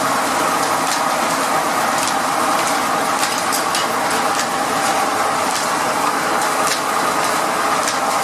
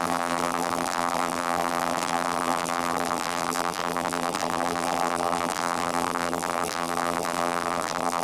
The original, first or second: first